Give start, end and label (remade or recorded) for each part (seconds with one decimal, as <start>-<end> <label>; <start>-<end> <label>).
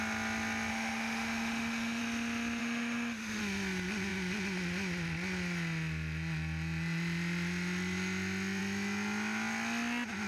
0.0-0.7 recorded; 0.7-2.0 remade; 2.0-2.6 recorded; 2.6-3.4 remade; 3.4-10.3 recorded